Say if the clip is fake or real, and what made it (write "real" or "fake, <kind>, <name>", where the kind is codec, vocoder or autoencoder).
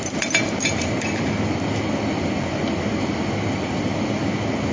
real